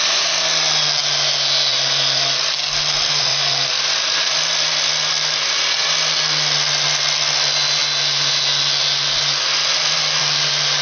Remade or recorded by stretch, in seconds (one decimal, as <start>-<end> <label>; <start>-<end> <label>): 0.0-1.7 recorded; 1.7-4.9 remade; 4.9-9.6 recorded; 9.6-10.2 remade; 10.2-10.8 recorded